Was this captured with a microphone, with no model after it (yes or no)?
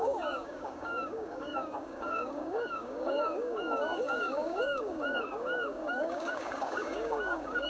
no